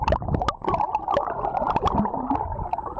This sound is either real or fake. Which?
real